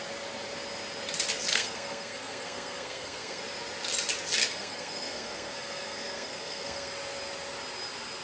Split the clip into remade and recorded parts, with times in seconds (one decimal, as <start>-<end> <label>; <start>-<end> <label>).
0.0-1.5 recorded; 1.5-3.4 remade; 3.4-4.4 recorded; 4.4-6.9 remade; 6.9-8.2 recorded